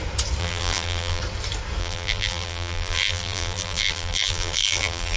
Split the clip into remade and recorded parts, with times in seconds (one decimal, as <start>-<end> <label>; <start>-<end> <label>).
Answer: 0.0-0.4 recorded; 0.4-1.2 remade; 1.2-1.8 recorded; 1.8-5.2 remade